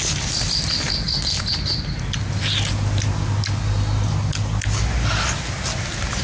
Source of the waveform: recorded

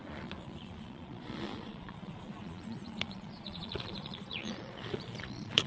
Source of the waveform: remade